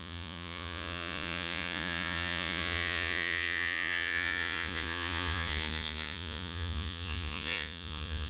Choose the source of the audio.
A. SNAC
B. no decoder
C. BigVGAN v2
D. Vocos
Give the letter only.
D